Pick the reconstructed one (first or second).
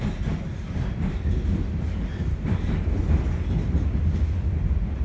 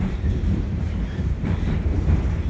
second